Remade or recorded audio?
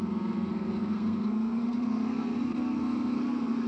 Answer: remade